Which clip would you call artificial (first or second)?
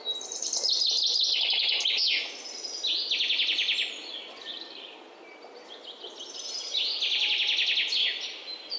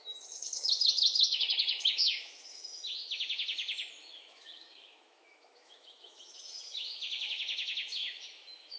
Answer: second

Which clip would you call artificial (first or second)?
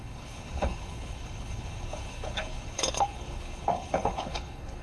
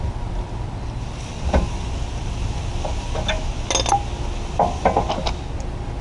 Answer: first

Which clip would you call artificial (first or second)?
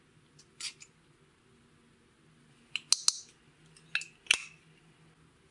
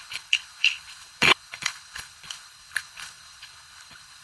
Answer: second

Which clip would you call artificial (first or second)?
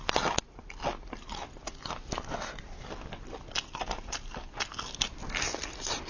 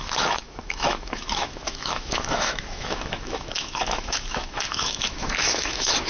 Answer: second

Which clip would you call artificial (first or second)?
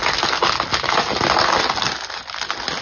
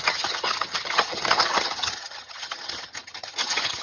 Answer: second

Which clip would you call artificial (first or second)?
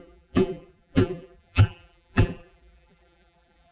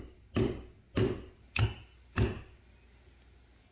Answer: first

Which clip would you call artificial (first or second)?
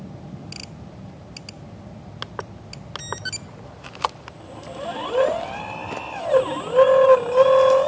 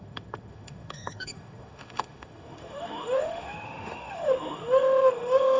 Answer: second